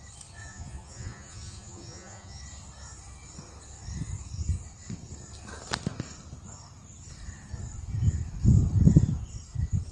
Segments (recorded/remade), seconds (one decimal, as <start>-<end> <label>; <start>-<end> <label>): 0.0-0.4 recorded; 0.4-2.4 remade; 2.4-9.9 recorded